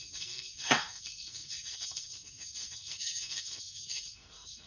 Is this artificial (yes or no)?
yes